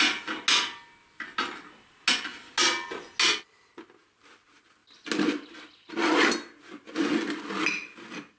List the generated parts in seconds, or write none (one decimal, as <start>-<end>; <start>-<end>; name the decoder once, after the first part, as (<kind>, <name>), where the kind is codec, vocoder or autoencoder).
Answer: none